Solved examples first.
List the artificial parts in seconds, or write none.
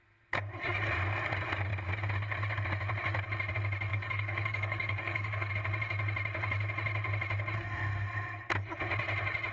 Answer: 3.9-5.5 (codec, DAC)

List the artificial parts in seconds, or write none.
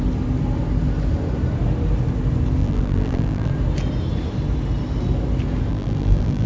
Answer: 2.6-3.5 (vocoder, BigVGAN v2); 5.7-6.5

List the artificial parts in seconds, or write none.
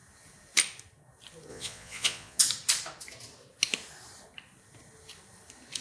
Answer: 1.5-2.4 (vocoder, Vocos)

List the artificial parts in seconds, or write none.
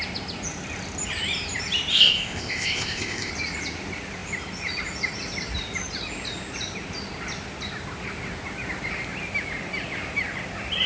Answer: 1.9-3.3 (codec, ZipCodec)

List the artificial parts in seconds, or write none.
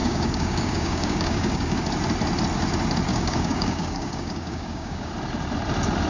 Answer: 0.0-1.8 (codec, DAC); 3.1-5.1